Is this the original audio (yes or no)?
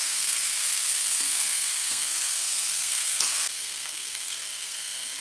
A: no